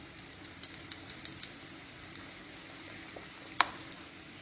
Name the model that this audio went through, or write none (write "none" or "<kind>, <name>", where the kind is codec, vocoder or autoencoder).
none